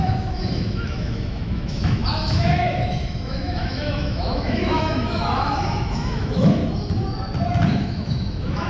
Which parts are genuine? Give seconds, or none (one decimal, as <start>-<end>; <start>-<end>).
6.6-7.8